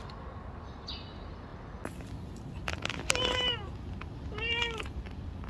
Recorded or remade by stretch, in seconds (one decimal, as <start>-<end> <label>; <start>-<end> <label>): 0.0-5.5 recorded

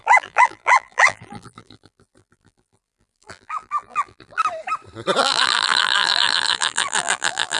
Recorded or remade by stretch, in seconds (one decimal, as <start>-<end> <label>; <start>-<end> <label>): 0.0-4.4 remade; 4.4-5.2 recorded; 5.2-7.6 remade

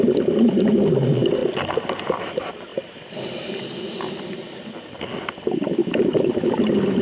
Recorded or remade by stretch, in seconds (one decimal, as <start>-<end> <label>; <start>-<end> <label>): 0.0-1.4 recorded; 1.4-2.2 remade; 2.2-2.7 recorded; 2.7-4.1 remade; 4.1-5.8 recorded; 5.8-6.6 remade; 6.6-7.0 recorded

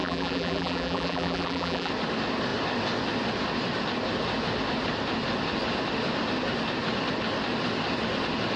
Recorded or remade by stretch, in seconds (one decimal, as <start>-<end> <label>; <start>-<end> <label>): 0.0-1.9 remade; 1.9-8.6 recorded